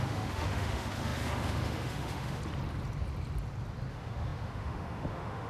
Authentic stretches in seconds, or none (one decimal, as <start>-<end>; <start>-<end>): 2.4-3.9

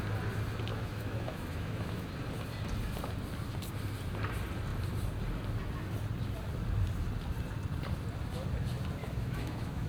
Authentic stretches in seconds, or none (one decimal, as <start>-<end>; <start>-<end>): 0.0-0.7; 2.1-9.0

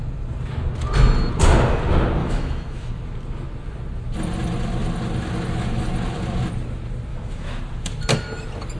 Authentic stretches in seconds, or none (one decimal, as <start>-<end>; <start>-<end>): 0.0-2.2; 2.9-7.1; 7.6-8.8

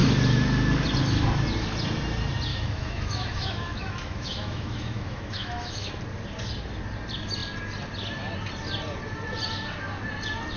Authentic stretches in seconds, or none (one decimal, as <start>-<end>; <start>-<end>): 0.0-2.5; 5.9-10.6

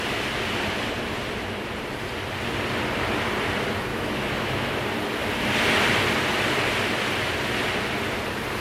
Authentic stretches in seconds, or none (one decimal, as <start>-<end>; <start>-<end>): 0.0-3.9; 4.8-8.6

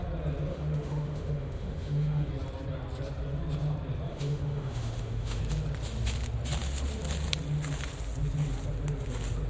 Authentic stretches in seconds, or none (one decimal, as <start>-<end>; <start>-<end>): 0.0-0.5; 2.3-4.1; 5.4-9.5

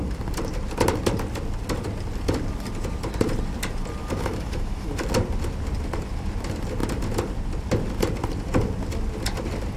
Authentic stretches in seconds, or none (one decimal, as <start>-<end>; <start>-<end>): 0.0-4.0; 4.9-9.8